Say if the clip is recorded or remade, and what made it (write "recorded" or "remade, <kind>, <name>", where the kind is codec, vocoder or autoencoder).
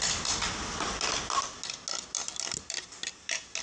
recorded